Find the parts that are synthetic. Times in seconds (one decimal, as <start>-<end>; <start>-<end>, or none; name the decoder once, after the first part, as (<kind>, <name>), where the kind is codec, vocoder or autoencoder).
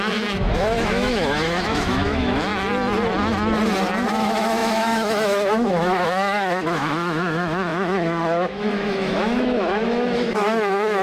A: 0.0-2.5 (autoencoder, DAC-VAE); 4.1-11.0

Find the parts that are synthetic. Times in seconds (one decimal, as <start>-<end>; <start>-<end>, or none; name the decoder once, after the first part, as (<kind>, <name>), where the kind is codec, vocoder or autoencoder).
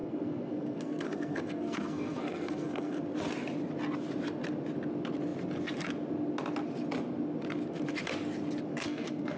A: 0.0-3.0 (codec, SNAC); 8.7-9.4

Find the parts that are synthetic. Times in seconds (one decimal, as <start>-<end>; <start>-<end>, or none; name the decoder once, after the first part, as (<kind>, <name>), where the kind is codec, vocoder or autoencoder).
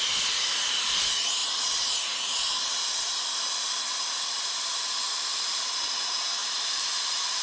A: 0.0-1.4 (vocoder, BigVGAN v2); 4.3-7.4